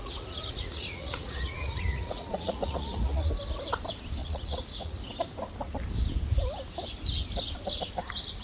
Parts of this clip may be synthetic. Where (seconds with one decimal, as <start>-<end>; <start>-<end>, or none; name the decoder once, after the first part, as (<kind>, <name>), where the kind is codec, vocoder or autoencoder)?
0.0-3.3 (vocoder, Vocos); 4.2-5.0

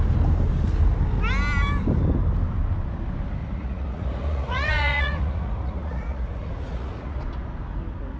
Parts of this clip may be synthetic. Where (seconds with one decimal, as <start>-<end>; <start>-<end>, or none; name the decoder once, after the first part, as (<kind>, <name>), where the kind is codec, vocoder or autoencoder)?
3.4-7.2 (vocoder, Vocos)